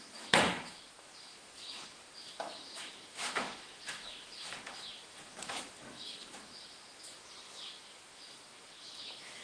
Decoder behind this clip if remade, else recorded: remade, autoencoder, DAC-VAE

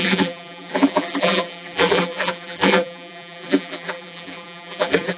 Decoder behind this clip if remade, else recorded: remade, vocoder, BigVGAN v2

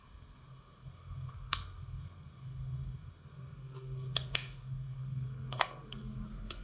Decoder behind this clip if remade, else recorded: remade, codec, SNAC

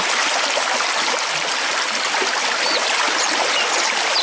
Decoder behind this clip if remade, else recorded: recorded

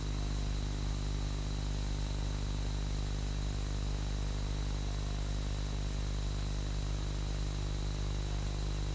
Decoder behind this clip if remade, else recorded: recorded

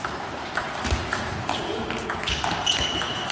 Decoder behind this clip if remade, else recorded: recorded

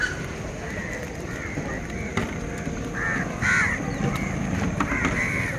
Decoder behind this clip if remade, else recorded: remade, vocoder, BigVGAN v2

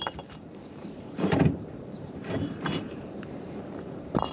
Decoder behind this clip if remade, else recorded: remade, vocoder, BigVGAN v2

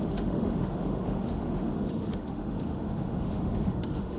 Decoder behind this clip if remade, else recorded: remade, autoencoder, DAC-VAE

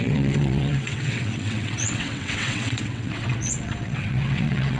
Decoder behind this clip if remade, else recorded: remade, vocoder, WaveNeXt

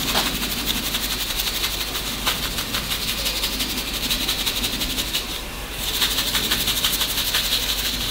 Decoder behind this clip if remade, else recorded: recorded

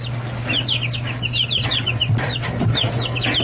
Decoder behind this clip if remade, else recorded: recorded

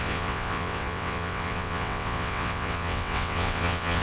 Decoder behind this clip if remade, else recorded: remade, vocoder, WaveNeXt